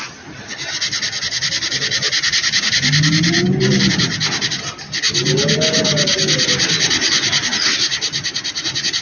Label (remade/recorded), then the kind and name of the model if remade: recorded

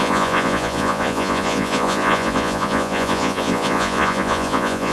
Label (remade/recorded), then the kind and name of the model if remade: remade, vocoder, Vocos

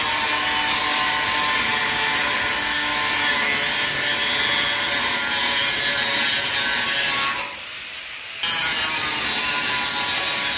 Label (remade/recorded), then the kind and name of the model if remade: recorded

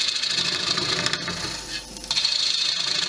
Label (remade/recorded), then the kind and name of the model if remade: recorded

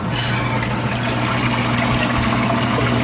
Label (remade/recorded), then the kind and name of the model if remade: recorded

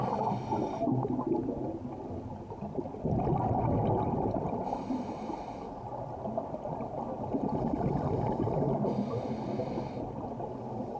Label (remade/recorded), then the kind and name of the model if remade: recorded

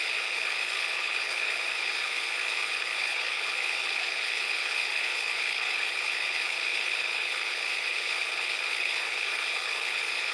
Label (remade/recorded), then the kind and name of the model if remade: remade, codec, HILCodec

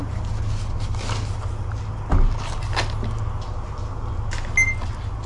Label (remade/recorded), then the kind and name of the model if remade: recorded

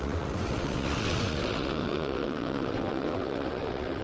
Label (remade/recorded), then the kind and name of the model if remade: remade, vocoder, WaveNeXt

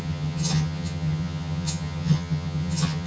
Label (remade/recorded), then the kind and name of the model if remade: remade, vocoder, HiFi-GAN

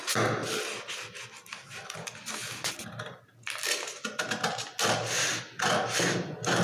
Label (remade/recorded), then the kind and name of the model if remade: recorded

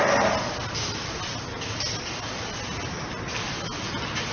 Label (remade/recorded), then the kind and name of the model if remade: recorded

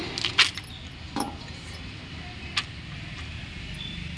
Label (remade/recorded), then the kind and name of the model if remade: recorded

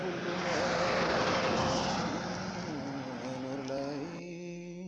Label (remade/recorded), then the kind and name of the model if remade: recorded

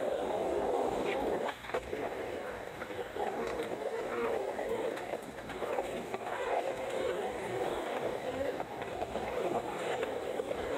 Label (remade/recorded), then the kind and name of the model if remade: remade, codec, DAC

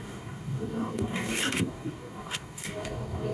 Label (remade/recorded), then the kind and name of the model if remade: remade, codec, DAC